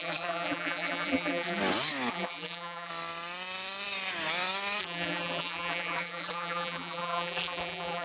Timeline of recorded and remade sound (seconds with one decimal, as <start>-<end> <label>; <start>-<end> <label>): 0.0-1.6 remade; 1.6-2.1 recorded; 2.1-2.9 remade; 2.9-4.8 recorded; 4.8-8.0 remade